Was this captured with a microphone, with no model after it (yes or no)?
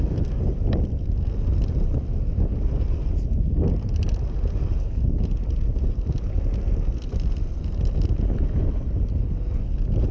yes